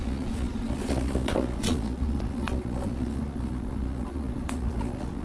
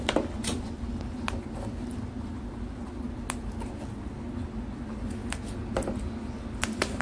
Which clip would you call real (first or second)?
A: second